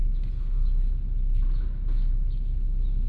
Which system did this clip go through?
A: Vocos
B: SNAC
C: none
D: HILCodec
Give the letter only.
C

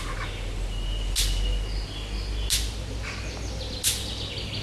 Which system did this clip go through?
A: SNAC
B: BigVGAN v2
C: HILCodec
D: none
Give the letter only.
D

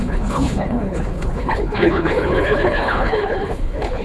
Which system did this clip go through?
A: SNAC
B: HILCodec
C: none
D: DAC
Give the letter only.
B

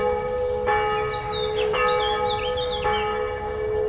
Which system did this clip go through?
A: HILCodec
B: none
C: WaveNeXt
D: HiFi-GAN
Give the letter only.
B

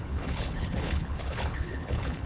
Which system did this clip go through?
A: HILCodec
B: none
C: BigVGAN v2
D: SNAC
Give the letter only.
A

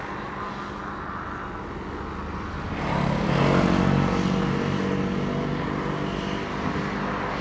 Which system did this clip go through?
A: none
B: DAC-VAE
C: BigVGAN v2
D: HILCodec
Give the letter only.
A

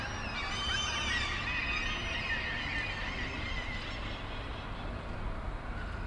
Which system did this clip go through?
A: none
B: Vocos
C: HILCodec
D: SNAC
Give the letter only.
A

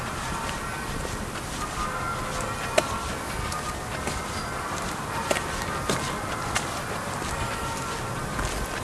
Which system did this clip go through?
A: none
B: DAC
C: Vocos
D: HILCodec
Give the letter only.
A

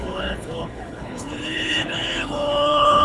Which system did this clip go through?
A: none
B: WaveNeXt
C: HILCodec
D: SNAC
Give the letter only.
C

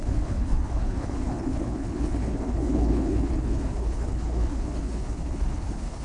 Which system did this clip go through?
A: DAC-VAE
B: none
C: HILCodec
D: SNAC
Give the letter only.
C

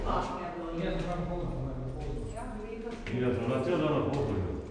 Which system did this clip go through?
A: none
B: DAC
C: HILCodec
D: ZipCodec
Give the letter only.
A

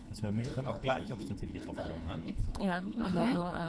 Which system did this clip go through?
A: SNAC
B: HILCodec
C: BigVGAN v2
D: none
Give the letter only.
B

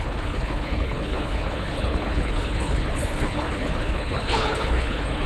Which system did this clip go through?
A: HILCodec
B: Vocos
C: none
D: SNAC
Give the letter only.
A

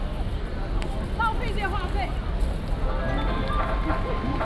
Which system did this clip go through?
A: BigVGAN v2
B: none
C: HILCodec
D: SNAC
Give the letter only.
B